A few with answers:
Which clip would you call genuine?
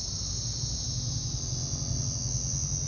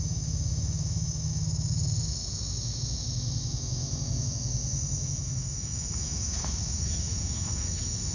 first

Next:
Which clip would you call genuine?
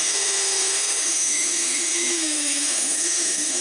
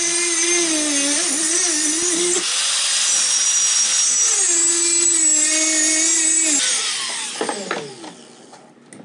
second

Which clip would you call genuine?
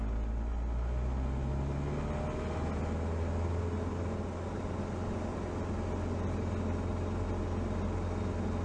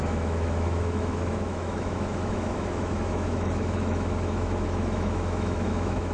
first